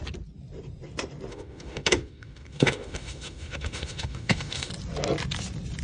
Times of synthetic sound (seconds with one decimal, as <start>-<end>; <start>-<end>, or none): 1.3-4.7